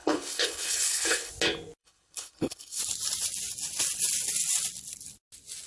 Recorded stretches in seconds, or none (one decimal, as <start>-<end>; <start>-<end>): 1.3-1.8; 2.8-5.7